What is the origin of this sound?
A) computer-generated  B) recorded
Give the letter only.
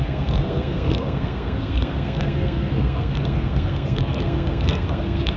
A